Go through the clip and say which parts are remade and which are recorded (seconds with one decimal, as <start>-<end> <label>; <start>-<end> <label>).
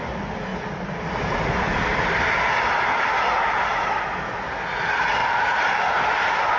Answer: 0.0-6.6 recorded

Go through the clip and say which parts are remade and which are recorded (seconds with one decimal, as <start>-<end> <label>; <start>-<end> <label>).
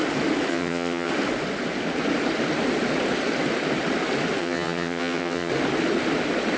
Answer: 0.0-0.5 recorded; 0.5-1.1 remade; 1.1-4.4 recorded; 4.4-5.5 remade; 5.5-6.6 recorded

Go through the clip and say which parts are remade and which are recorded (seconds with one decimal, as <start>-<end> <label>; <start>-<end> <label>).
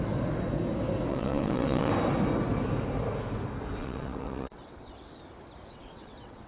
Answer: 0.0-1.1 recorded; 1.1-1.9 remade; 1.9-3.8 recorded; 3.8-4.9 remade; 4.9-5.7 recorded; 5.7-6.5 remade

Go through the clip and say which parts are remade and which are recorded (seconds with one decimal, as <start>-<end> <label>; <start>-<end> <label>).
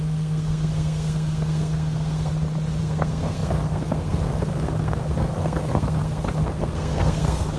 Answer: 0.0-2.3 remade; 2.3-2.8 recorded; 2.8-7.6 remade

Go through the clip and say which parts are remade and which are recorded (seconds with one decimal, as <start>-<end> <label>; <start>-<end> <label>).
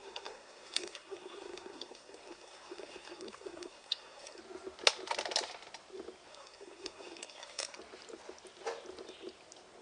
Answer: 0.0-4.4 remade; 4.4-6.3 recorded; 6.3-7.8 remade; 7.8-9.8 recorded